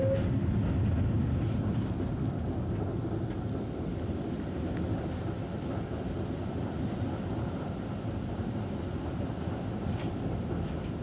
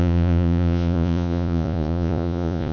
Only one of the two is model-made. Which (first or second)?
second